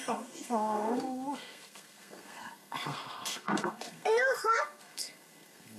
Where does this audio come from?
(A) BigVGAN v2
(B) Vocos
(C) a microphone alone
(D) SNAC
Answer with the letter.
D